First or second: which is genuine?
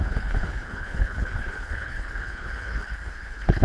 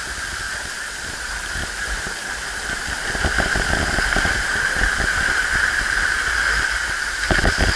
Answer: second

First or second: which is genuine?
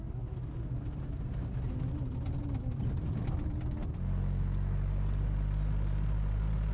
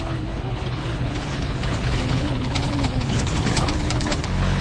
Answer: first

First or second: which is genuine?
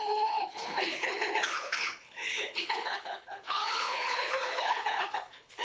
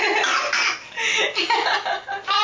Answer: second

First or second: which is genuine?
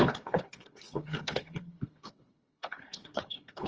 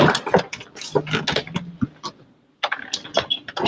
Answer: second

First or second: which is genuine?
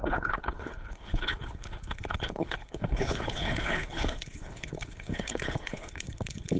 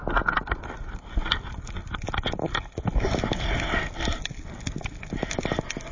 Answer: second